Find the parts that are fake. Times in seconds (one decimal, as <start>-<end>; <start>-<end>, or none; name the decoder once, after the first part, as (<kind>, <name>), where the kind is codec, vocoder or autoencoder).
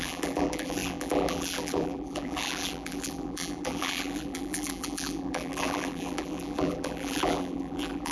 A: 0.0-8.1 (vocoder, BigVGAN v2)